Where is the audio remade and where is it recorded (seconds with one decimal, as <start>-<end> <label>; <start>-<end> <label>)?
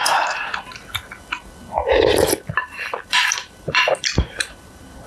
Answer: 0.0-3.1 recorded; 3.1-5.1 remade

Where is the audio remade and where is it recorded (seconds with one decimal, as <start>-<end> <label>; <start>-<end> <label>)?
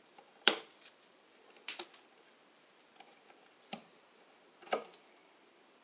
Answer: 0.0-3.7 remade; 3.7-5.0 recorded; 5.0-5.8 remade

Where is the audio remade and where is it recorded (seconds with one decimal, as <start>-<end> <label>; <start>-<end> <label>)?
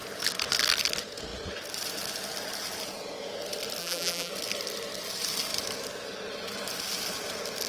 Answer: 0.0-3.8 recorded; 3.8-4.3 remade; 4.3-7.7 recorded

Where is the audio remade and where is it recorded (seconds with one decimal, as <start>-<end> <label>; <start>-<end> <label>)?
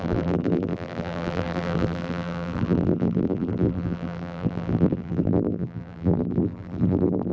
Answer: 0.0-7.3 remade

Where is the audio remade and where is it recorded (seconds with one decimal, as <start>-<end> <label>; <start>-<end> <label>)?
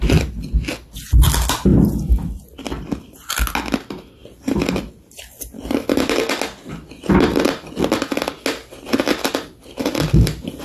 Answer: 0.0-1.7 recorded; 1.7-2.4 remade; 2.4-4.2 recorded; 4.2-6.2 remade; 6.2-10.6 recorded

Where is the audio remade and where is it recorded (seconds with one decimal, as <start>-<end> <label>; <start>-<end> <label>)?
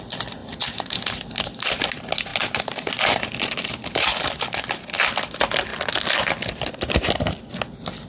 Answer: 0.0-0.4 recorded; 0.4-1.5 remade; 1.5-2.3 recorded; 2.3-2.9 remade; 2.9-8.1 recorded